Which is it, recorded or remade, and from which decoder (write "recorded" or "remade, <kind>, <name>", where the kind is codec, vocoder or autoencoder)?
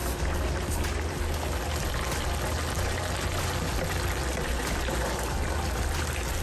recorded